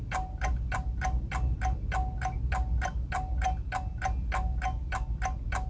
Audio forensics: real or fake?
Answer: real